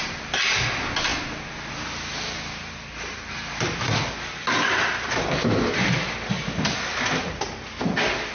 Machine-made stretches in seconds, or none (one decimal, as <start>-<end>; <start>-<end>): none